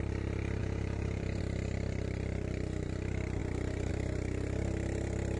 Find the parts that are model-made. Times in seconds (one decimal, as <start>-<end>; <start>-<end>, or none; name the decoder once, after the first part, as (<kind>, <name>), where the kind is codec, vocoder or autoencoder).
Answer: 0.6-1.4 (vocoder, Vocos)